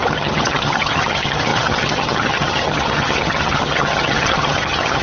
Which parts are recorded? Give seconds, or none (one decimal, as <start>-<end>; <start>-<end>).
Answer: none